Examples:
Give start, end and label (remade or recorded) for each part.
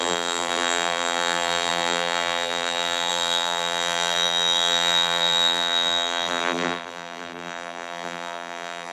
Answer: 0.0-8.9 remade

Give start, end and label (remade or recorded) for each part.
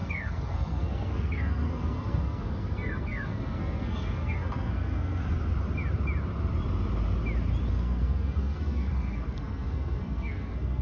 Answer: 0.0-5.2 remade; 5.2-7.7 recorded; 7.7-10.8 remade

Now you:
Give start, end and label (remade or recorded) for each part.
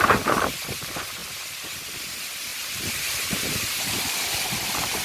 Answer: 0.0-2.5 recorded; 2.5-3.7 remade; 3.7-5.0 recorded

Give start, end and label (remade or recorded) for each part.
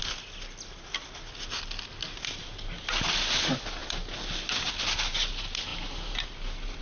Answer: 0.0-6.8 recorded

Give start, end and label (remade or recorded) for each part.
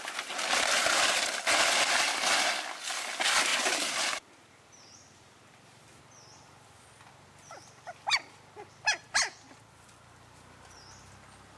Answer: 0.0-3.5 recorded; 3.5-6.0 remade; 6.0-11.6 recorded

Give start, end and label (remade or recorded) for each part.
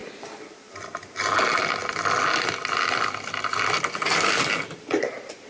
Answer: 0.0-5.5 recorded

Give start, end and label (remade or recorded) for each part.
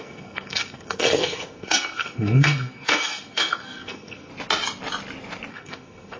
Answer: 0.0-4.3 remade; 4.3-5.5 recorded; 5.5-6.2 remade